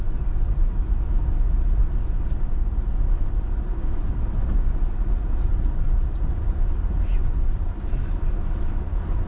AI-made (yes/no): no